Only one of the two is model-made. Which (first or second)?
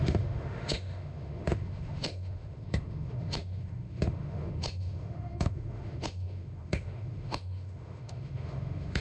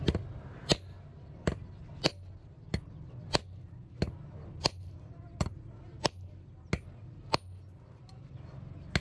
first